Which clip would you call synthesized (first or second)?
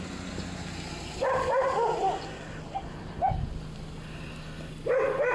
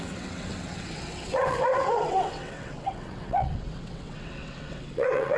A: second